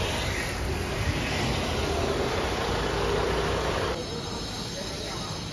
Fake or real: real